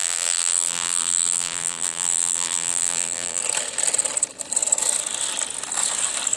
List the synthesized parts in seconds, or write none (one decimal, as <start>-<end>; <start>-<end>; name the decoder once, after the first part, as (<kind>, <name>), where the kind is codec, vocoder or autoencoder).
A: 0.0-3.4 (vocoder, BigVGAN v2)